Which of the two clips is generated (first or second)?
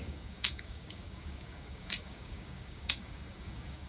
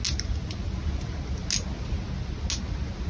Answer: first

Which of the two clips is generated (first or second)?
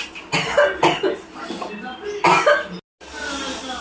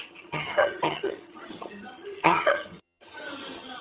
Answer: second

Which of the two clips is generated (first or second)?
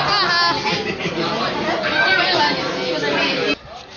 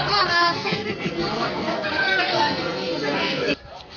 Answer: second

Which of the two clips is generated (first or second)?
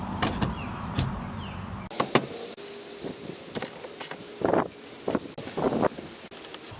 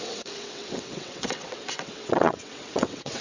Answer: second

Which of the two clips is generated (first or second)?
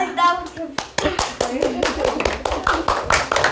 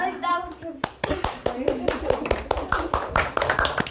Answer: second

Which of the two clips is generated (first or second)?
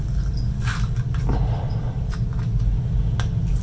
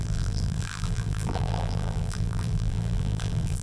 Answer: second